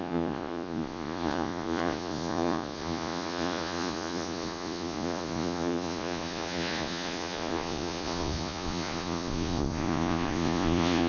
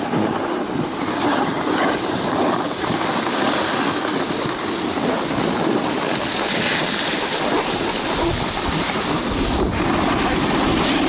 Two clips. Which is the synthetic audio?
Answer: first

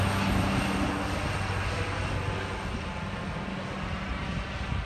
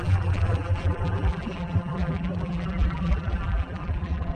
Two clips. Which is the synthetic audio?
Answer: second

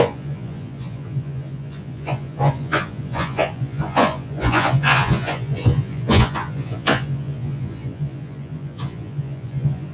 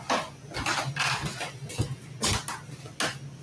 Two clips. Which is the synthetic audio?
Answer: first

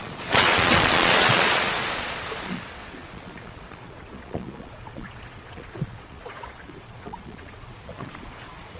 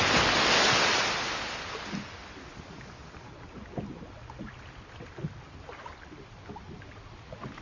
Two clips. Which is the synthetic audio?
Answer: first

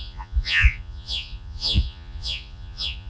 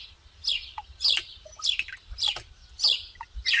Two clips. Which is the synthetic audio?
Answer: first